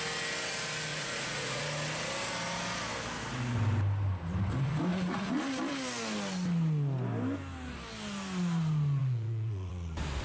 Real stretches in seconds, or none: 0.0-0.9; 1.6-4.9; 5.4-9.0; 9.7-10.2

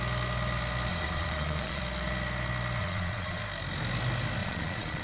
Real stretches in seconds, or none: 0.0-0.9; 1.8-2.8; 3.4-4.4

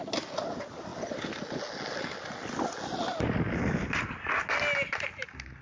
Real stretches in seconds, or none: 0.0-5.6

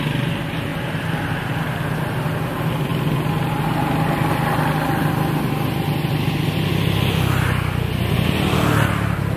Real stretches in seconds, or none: 0.0-9.4

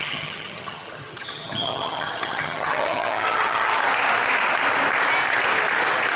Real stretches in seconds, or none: 3.7-6.2

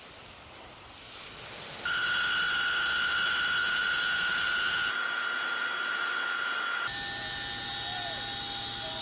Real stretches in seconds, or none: 0.0-3.6; 8.4-9.0

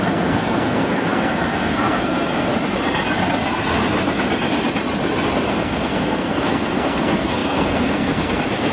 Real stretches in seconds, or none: 2.5-5.5